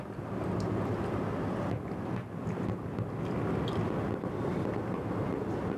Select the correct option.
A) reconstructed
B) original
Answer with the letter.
B